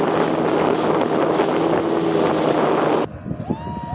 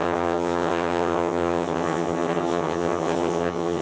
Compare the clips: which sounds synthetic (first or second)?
second